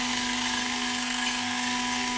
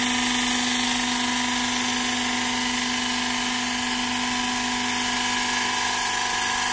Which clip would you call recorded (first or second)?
second